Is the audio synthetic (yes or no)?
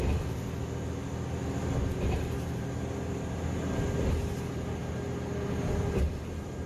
no